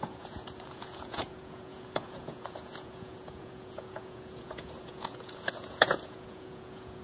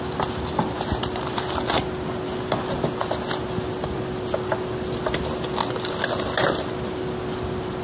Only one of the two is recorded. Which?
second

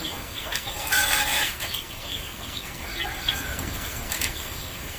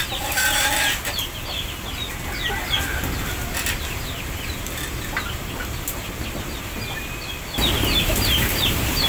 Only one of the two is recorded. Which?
second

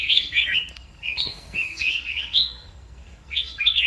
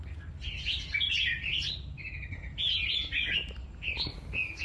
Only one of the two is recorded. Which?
second